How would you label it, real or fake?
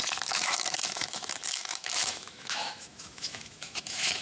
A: fake